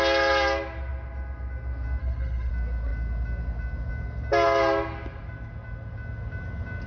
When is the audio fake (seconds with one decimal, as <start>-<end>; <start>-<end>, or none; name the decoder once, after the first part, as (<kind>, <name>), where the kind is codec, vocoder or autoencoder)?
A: 2.0-2.5 (codec, HILCodec)